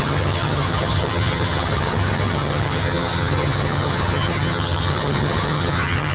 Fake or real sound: fake